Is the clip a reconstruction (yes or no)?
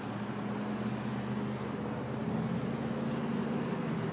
no